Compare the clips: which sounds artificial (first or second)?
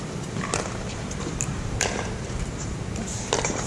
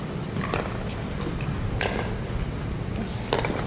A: first